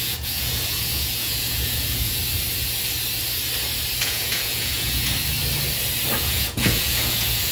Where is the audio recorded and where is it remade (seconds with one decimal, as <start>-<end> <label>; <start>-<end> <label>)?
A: 0.0-2.2 remade; 2.2-4.0 recorded; 4.0-5.1 remade; 5.1-6.2 recorded; 6.2-7.5 remade